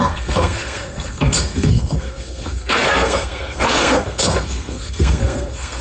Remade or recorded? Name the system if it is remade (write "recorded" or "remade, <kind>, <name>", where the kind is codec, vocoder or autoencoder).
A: remade, codec, SNAC